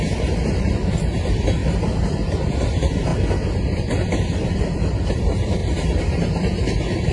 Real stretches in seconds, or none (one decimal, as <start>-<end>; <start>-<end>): 3.1-4.6